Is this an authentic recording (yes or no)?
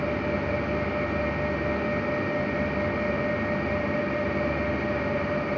yes